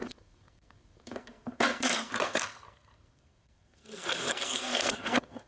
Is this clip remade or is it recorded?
remade